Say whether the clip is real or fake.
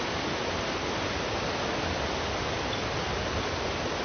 real